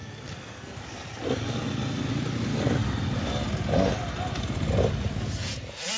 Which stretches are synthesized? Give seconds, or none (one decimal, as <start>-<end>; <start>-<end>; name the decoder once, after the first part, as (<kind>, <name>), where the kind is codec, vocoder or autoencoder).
0.0-0.8 (codec, SNAC)